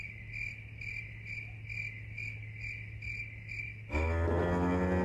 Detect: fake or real real